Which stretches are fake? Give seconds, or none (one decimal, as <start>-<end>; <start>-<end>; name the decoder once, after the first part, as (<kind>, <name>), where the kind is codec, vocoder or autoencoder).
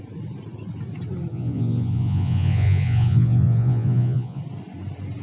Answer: 1.3-4.4 (vocoder, Vocos)